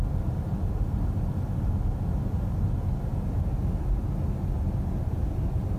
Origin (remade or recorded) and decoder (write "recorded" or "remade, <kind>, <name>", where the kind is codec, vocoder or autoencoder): recorded